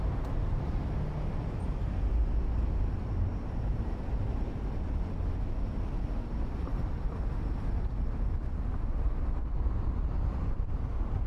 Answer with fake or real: real